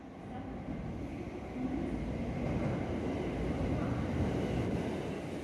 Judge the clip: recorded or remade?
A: recorded